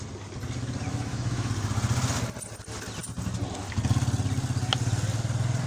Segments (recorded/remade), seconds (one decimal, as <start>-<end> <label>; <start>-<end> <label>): 0.0-0.9 recorded; 0.9-1.5 remade; 1.5-5.7 recorded